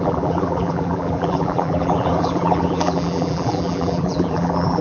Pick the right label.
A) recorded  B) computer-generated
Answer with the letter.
B